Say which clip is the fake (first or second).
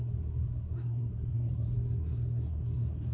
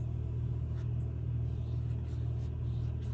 first